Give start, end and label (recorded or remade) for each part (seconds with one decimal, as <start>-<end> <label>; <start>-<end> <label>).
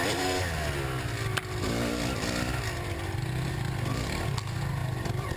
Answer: 0.0-5.4 recorded